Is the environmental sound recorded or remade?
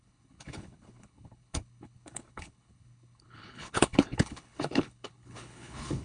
remade